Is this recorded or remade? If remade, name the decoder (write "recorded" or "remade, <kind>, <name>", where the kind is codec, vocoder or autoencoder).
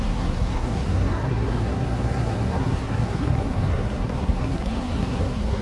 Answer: remade, codec, SNAC